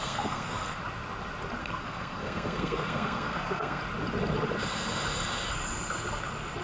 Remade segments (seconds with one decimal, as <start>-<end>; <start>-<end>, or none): 0.0-0.8; 1.6-3.8